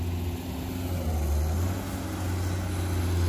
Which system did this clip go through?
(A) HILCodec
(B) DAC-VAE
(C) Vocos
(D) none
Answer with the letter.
D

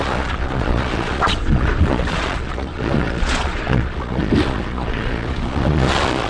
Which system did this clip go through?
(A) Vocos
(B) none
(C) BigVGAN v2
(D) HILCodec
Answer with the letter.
A